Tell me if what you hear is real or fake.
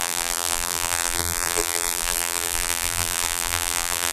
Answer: fake